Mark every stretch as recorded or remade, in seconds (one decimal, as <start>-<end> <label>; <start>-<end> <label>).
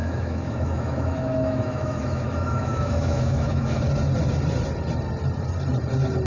0.0-3.8 remade; 3.8-6.3 recorded